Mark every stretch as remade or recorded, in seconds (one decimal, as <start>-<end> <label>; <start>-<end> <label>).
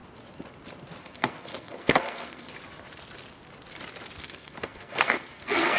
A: 0.0-1.0 recorded; 1.0-2.5 remade; 2.5-4.2 recorded; 4.2-5.8 remade